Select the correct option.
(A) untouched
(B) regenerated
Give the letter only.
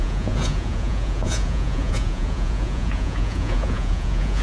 B